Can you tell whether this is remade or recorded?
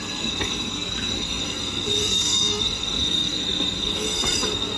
remade